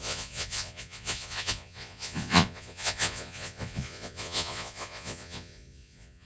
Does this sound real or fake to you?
fake